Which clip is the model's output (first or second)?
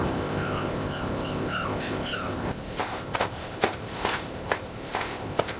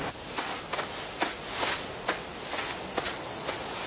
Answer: first